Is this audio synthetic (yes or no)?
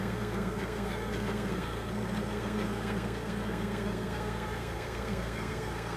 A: yes